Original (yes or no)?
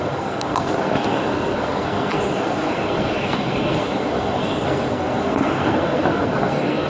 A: no